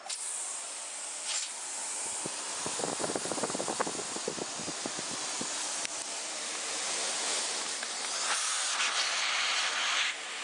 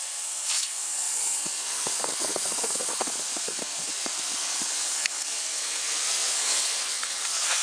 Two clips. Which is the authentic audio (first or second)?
first